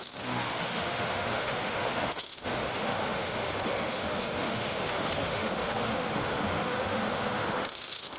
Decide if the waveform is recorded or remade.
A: remade